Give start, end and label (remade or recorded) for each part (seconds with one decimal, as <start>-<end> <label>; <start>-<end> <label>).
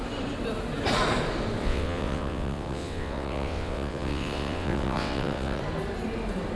0.0-1.6 recorded; 1.6-5.6 remade; 5.6-6.6 recorded